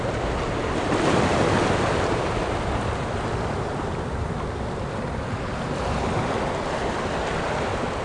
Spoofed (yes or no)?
no